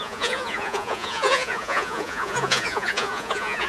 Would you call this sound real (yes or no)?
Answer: no